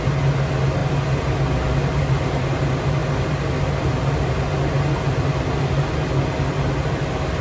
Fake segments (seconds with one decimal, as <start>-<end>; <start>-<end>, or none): none